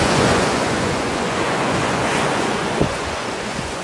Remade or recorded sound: remade